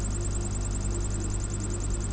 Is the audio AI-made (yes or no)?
no